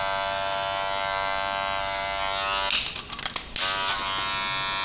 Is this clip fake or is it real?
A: real